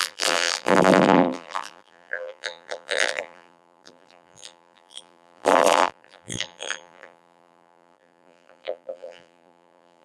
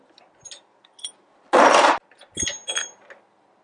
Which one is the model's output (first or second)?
first